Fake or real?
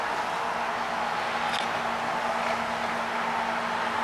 real